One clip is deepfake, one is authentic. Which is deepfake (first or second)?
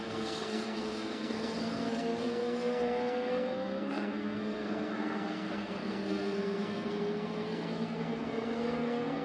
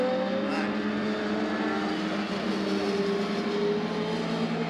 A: first